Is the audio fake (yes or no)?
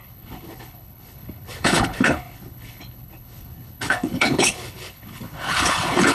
yes